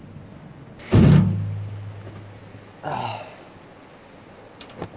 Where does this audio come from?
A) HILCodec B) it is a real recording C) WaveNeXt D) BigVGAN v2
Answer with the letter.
B